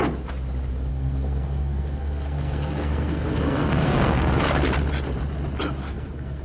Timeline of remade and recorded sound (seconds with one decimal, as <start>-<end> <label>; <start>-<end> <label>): 0.0-0.9 recorded; 0.9-4.4 remade; 4.4-5.8 recorded; 5.8-6.4 remade